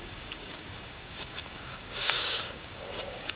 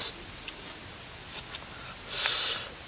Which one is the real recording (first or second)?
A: second